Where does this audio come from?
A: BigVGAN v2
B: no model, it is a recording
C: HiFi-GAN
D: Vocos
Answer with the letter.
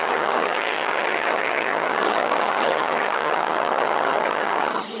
C